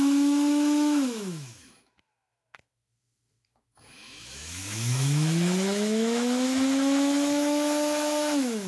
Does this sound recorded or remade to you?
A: remade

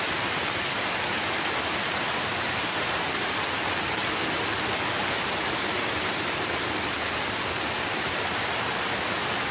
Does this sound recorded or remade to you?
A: recorded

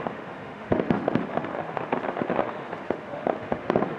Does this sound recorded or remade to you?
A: remade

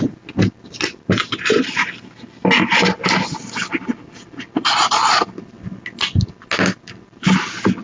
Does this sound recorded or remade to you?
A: recorded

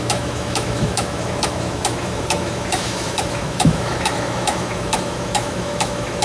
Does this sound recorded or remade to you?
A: remade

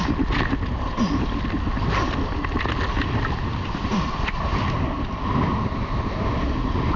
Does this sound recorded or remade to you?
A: recorded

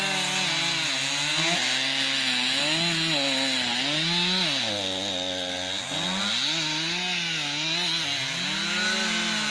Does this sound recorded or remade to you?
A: recorded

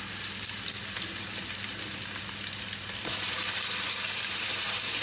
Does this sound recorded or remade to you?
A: recorded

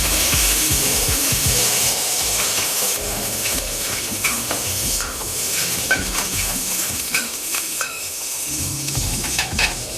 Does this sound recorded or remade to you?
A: remade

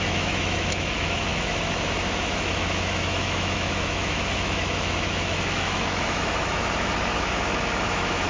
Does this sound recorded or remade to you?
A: remade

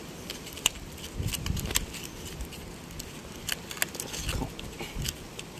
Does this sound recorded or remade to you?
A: recorded